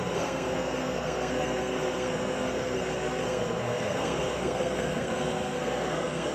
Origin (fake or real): fake